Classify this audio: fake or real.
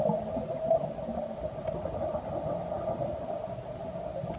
real